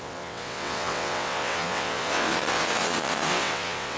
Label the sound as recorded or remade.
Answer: remade